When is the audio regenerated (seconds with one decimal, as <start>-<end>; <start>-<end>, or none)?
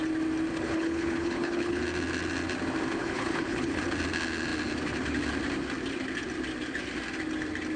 0.5-1.8; 3.0-3.8